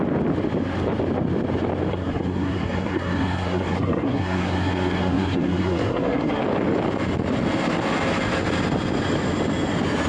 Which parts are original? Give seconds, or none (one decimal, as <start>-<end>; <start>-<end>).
0.0-1.9; 6.4-10.1